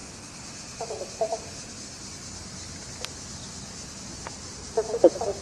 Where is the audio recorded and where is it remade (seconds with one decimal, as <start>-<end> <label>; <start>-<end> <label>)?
0.0-5.4 recorded